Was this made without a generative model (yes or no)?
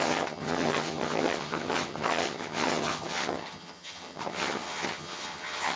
no